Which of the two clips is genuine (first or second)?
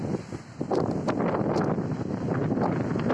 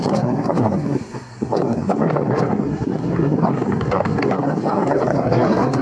first